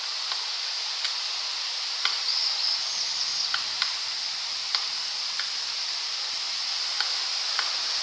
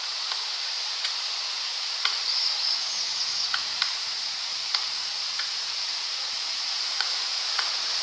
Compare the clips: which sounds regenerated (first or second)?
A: second